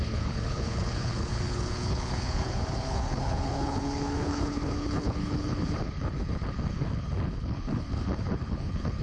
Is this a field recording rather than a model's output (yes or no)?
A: no